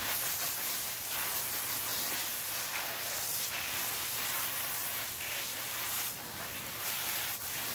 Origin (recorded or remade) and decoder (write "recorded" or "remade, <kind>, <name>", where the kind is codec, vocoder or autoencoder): remade, vocoder, BigVGAN v2